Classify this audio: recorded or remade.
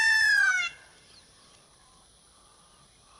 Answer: remade